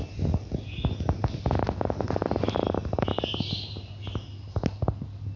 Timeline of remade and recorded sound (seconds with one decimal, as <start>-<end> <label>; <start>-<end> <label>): 0.0-5.4 recorded

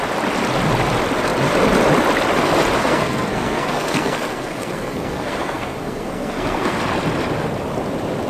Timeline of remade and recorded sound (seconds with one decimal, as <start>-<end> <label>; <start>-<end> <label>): 0.0-2.8 recorded; 2.8-6.8 remade; 6.8-8.3 recorded

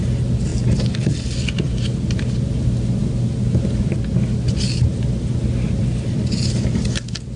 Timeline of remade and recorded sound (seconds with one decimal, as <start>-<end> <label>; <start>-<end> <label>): 0.0-7.4 recorded

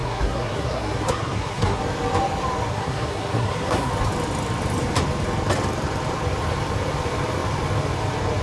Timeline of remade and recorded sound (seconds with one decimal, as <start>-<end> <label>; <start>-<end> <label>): 0.0-1.8 remade; 1.8-2.7 recorded; 2.7-3.9 remade; 3.9-8.4 recorded

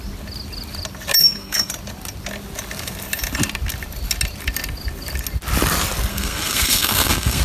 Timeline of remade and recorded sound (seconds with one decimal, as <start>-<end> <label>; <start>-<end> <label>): 0.0-1.2 recorded; 1.2-1.7 remade; 1.7-6.1 recorded; 6.1-7.4 remade

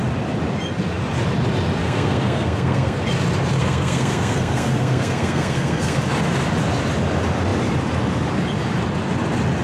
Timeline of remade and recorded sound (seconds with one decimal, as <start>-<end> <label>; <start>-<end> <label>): 0.0-1.8 recorded; 1.8-3.0 remade; 3.0-3.6 recorded; 3.6-6.0 remade; 6.0-9.6 recorded

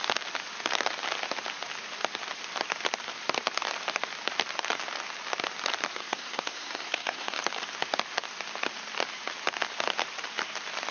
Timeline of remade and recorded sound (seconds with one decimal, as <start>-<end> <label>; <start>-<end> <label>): 0.0-6.0 recorded; 6.0-7.4 remade; 7.4-10.9 recorded